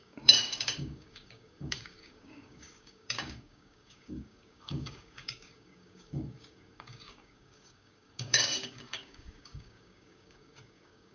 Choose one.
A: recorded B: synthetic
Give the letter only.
B